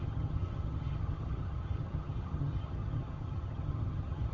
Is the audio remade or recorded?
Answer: remade